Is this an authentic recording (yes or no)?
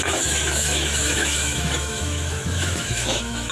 no